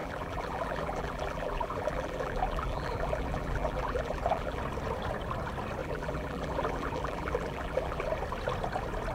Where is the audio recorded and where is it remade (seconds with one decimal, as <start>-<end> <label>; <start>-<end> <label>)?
0.0-4.6 remade; 4.6-5.8 recorded; 5.8-8.1 remade; 8.1-9.1 recorded